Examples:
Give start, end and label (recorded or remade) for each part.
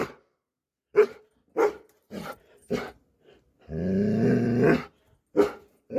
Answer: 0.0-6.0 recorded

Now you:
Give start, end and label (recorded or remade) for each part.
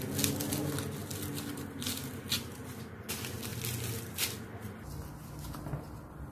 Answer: 0.0-6.3 recorded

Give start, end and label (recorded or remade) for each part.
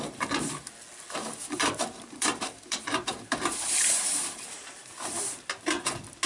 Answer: 0.0-1.2 recorded; 1.2-5.0 remade; 5.0-6.3 recorded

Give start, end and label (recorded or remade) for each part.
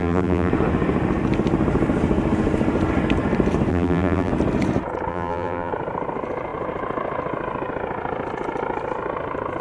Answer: 0.0-0.5 remade; 0.5-3.7 recorded; 3.7-4.3 remade; 4.3-5.1 recorded; 5.1-5.7 remade; 5.7-9.6 recorded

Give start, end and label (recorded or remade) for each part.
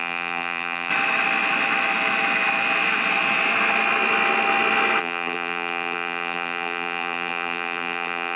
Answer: 0.0-0.9 remade; 0.9-5.0 recorded; 5.0-8.4 remade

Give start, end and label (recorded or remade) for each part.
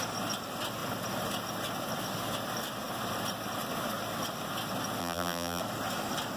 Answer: 0.0-5.0 recorded; 5.0-5.6 remade; 5.6-6.4 recorded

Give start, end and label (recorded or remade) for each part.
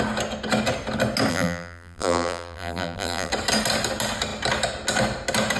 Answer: 0.0-1.3 recorded; 1.3-3.3 remade; 3.3-5.6 recorded